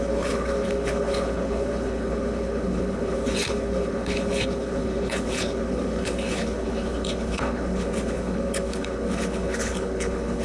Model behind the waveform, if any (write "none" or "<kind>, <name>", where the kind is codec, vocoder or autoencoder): codec, HILCodec